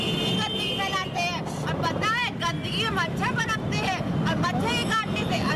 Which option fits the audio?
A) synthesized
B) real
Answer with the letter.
B